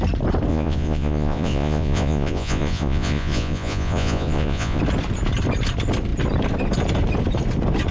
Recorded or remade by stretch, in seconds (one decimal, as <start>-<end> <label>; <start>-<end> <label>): 0.0-0.5 recorded; 0.5-4.8 remade; 4.8-7.9 recorded